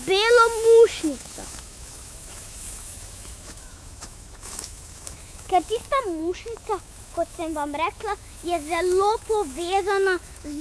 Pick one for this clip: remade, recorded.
remade